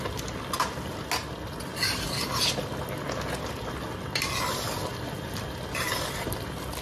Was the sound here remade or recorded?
recorded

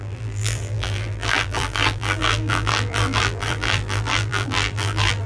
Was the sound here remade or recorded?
remade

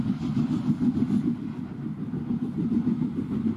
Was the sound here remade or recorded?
recorded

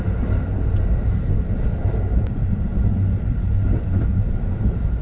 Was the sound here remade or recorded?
remade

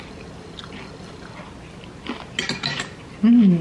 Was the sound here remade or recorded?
recorded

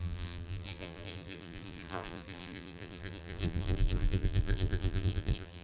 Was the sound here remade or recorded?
remade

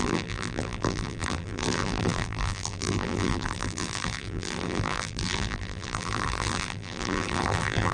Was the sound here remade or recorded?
remade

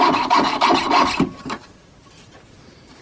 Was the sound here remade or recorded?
remade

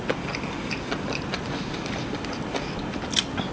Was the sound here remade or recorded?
recorded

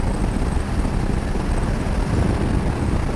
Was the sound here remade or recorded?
remade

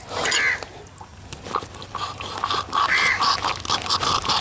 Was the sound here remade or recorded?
recorded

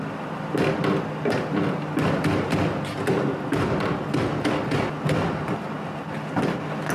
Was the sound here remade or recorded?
recorded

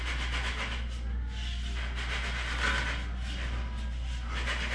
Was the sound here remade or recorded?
recorded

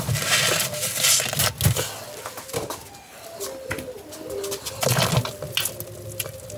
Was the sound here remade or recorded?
recorded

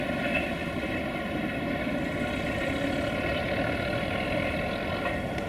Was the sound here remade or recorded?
remade